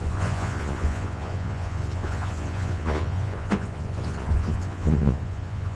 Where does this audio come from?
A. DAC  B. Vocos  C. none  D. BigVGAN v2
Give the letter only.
B